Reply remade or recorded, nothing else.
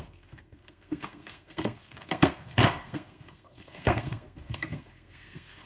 remade